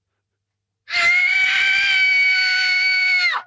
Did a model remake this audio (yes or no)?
no